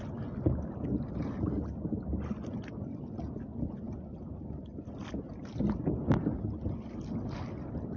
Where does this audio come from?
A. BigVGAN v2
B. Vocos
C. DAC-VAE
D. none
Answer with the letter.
D